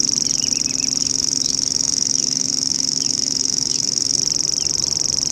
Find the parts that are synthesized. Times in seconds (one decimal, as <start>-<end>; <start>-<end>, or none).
1.0-4.2